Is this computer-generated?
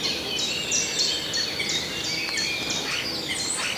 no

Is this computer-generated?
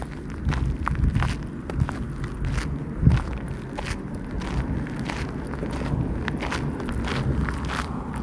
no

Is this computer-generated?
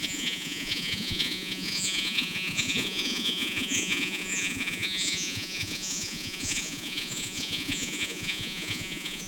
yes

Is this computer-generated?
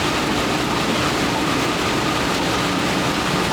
no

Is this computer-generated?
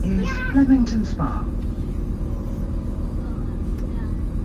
no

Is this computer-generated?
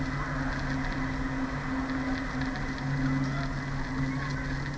no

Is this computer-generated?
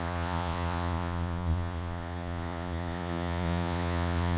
yes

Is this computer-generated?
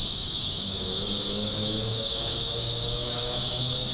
yes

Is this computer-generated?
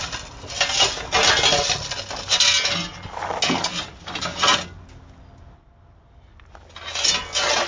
no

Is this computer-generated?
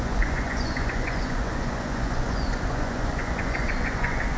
yes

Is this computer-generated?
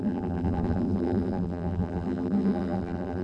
yes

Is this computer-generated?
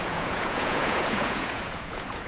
yes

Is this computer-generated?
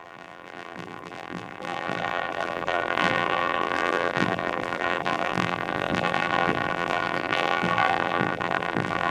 yes